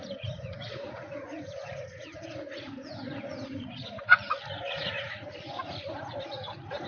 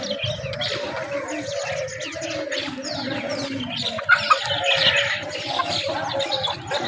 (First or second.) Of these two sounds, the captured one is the second